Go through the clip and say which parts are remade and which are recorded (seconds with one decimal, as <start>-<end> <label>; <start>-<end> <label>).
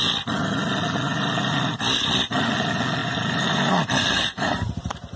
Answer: 0.0-1.1 recorded; 1.1-1.7 remade; 1.7-3.0 recorded; 3.0-5.2 remade